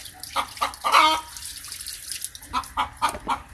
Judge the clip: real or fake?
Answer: real